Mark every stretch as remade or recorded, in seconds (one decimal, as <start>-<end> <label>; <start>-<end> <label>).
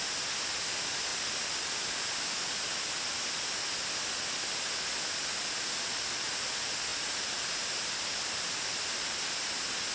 0.0-9.9 recorded